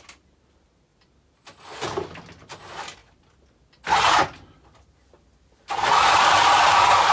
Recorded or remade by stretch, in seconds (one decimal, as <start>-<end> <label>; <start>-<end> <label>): 0.0-7.1 recorded